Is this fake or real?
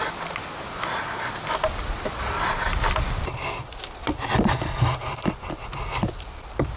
real